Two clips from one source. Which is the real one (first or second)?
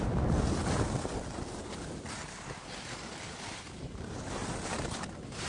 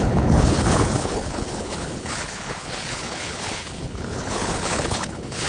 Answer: first